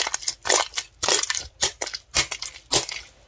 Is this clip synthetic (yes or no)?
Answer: no